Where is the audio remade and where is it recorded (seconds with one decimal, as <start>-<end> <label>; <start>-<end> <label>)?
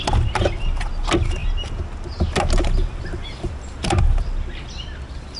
0.0-5.4 recorded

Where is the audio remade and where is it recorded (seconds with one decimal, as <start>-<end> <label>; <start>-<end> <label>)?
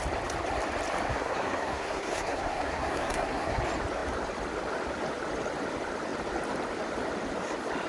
0.0-1.1 recorded; 1.1-3.6 remade; 3.6-7.9 recorded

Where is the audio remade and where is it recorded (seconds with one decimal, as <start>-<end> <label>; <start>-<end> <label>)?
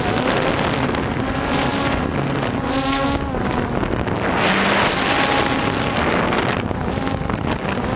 0.0-8.0 recorded